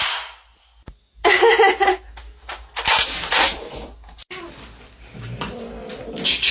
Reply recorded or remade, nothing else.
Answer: recorded